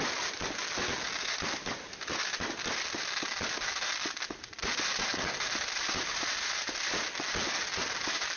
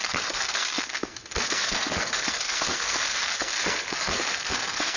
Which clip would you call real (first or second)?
first